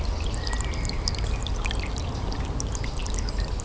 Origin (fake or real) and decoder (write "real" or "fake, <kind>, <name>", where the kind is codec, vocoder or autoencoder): real